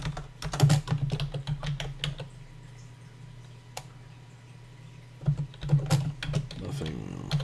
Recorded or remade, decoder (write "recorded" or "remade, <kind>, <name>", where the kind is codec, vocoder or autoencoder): recorded